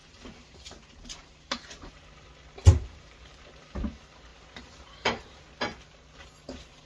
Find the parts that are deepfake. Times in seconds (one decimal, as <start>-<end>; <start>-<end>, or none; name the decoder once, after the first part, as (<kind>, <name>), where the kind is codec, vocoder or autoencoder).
0.0-2.0 (vocoder, BigVGAN v2); 2.6-3.5; 4.3-5.4